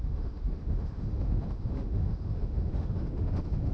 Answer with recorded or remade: remade